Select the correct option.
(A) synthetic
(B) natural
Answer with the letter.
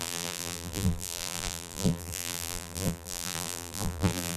A